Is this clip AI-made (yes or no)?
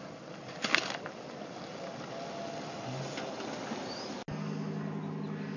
no